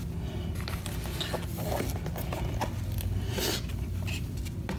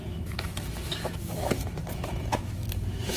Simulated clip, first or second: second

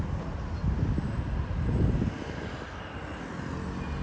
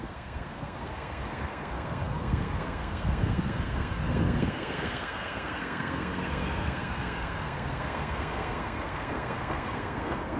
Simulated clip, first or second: second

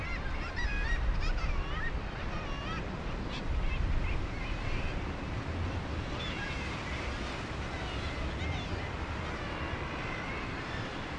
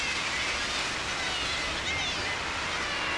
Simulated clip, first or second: first